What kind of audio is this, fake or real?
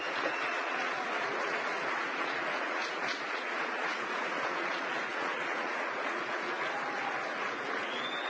fake